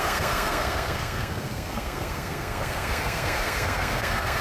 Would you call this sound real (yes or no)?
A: no